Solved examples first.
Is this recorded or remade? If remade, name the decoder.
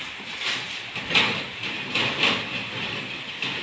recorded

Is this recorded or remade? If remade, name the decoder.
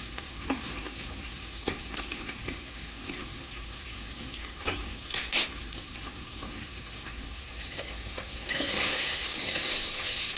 remade, codec, SNAC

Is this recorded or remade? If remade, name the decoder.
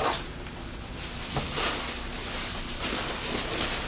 recorded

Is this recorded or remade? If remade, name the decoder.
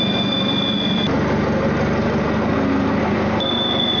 recorded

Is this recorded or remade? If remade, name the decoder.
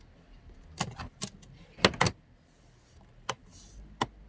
recorded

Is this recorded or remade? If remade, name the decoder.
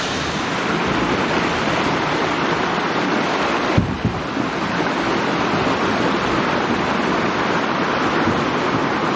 recorded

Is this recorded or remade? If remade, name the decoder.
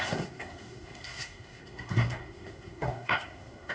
remade, codec, SNAC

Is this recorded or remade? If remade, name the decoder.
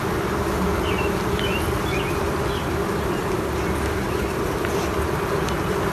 recorded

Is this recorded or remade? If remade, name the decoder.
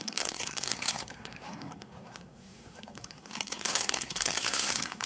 remade, codec, SNAC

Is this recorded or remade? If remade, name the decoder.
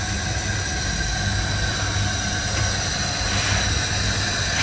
recorded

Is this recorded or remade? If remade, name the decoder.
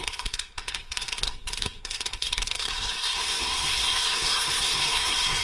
remade, codec, SNAC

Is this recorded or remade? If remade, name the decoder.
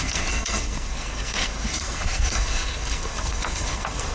remade, codec, SNAC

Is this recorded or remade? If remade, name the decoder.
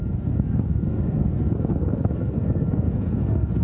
remade, codec, SNAC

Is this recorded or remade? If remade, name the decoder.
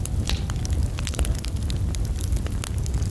recorded